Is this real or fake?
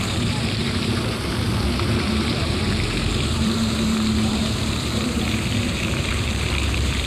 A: fake